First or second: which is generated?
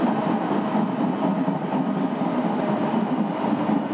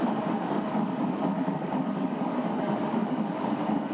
second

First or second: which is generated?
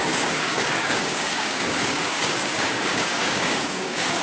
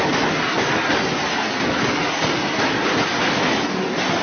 first